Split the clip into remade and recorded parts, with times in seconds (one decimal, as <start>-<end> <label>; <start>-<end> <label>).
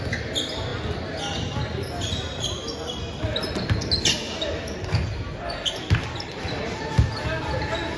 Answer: 0.0-8.0 recorded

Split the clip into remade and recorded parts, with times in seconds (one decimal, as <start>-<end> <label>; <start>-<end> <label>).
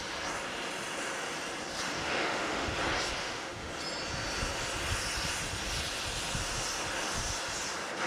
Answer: 0.0-2.0 recorded; 2.0-2.7 remade; 2.7-3.2 recorded; 3.2-3.7 remade; 3.7-8.1 recorded